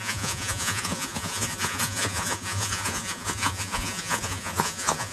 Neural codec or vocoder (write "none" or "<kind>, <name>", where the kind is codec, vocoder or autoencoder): vocoder, Vocos